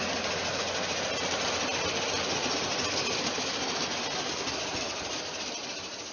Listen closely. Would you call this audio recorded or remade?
recorded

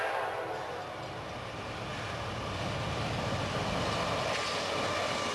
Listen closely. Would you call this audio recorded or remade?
recorded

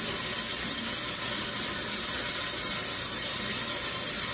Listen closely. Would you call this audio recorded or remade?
recorded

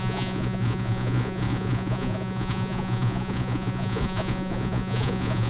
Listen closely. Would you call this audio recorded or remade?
remade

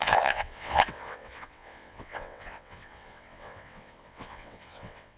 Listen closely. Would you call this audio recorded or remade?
remade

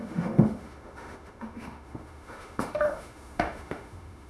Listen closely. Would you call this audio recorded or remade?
remade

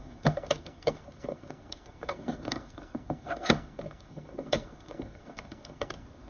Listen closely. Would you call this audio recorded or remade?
remade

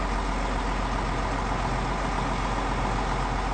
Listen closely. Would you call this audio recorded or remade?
recorded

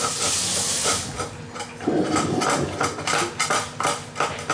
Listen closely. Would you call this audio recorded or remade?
recorded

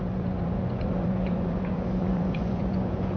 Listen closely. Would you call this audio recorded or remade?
remade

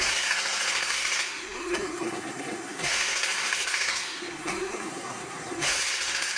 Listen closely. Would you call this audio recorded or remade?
remade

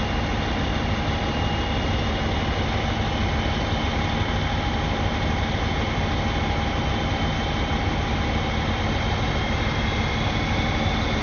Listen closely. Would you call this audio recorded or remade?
recorded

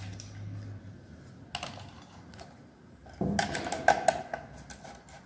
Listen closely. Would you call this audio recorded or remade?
recorded